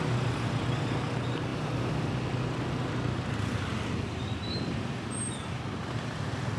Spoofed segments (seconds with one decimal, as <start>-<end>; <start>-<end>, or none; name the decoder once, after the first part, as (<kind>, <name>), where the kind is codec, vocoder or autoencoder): none